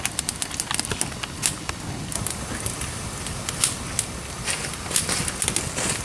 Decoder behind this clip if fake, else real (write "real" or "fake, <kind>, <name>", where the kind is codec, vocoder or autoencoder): real